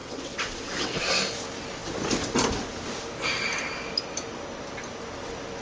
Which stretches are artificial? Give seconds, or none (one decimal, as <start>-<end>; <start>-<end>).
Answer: 0.0-1.0